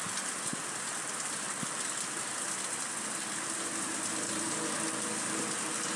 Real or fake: real